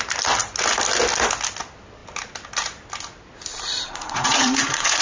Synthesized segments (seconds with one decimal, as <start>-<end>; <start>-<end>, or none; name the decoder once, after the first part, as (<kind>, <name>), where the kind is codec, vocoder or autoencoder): 3.5-5.0 (vocoder, Vocos)